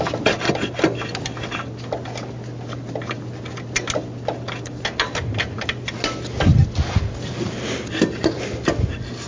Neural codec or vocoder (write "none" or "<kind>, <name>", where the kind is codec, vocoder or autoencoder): none